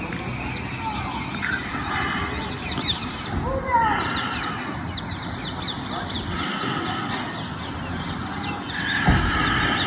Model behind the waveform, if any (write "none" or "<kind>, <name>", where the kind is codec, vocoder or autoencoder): none